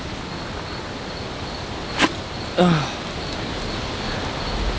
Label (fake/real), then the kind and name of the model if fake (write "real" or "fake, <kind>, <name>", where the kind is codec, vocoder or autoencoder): real